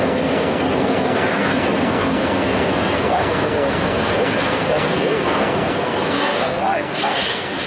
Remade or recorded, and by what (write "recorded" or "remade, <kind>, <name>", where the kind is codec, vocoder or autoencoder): remade, codec, SNAC